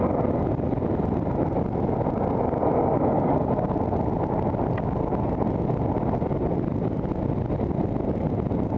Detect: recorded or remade recorded